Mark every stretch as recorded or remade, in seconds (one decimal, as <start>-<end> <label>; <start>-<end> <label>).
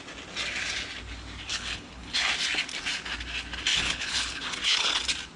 0.0-1.5 recorded; 1.5-2.3 remade; 2.3-3.7 recorded; 3.7-5.0 remade; 5.0-5.4 recorded